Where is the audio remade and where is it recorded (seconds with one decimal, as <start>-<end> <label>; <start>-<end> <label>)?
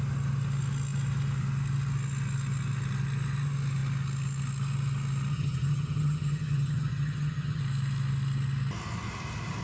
0.0-5.3 recorded; 5.3-7.6 remade; 7.6-9.6 recorded